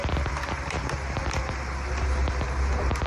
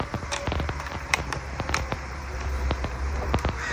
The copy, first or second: second